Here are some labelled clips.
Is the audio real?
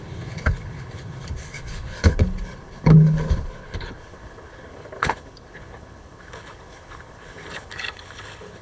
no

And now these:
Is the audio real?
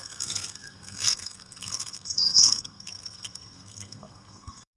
no